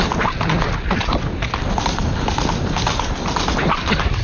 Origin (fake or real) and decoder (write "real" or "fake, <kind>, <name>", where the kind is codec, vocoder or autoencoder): real